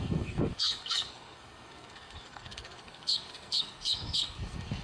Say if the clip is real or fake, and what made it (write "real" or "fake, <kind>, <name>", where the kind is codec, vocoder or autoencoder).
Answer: fake, codec, SNAC